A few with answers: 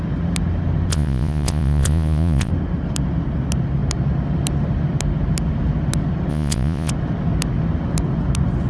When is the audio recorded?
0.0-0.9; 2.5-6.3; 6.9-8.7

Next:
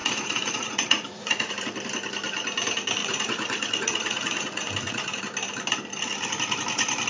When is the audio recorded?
1.5-3.0; 5.2-7.1

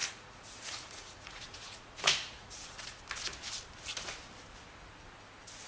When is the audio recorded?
3.0-5.7

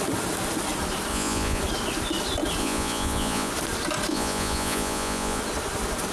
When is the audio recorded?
0.0-1.1; 1.6-2.6; 3.5-4.1; 5.4-6.1

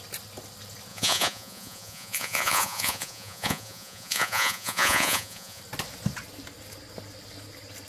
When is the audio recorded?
0.0-0.9; 5.6-7.9